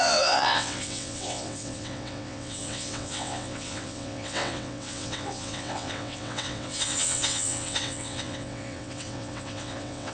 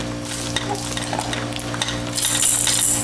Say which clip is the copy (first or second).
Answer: first